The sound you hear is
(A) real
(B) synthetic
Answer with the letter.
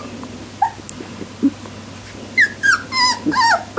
A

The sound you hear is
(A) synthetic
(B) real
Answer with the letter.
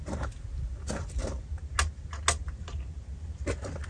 B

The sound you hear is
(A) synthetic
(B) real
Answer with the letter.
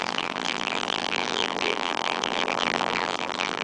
A